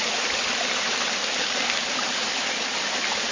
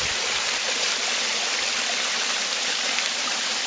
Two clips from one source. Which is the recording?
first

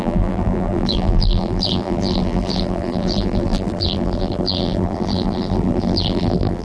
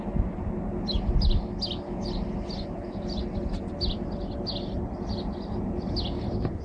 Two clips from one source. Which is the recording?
second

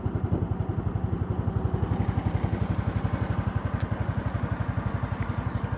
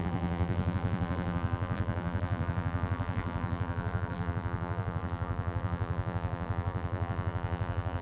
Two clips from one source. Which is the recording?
first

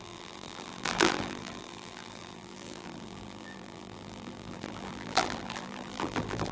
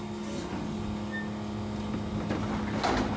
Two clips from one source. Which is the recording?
second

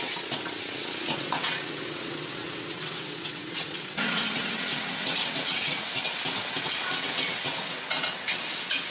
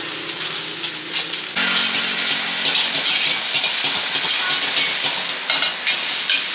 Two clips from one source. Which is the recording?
second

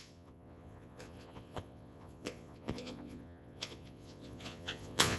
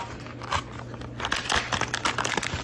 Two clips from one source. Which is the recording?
second